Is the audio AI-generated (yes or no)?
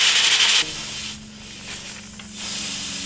no